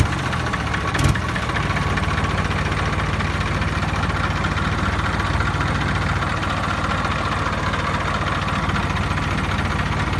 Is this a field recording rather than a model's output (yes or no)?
yes